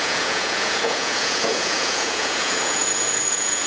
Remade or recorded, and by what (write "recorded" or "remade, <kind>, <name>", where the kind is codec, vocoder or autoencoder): remade, vocoder, Vocos